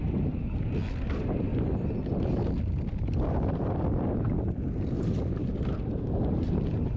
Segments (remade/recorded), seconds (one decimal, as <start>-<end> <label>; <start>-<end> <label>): 0.0-7.0 recorded